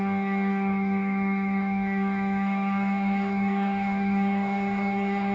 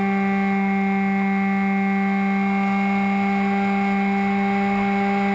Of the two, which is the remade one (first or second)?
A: first